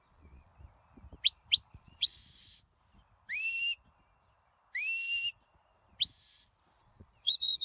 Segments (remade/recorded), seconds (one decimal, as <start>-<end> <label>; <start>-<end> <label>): 0.0-0.5 remade; 0.5-1.8 recorded; 1.8-2.2 remade; 2.2-6.8 recorded; 6.8-7.6 remade